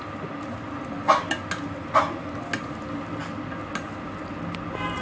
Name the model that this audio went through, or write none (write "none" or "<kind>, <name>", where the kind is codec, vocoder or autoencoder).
none